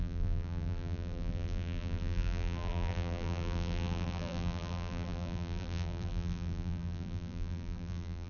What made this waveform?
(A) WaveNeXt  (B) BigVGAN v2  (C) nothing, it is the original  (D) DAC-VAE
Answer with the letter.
B